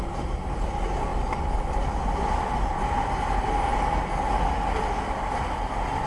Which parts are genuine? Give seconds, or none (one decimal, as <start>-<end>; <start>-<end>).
0.0-6.1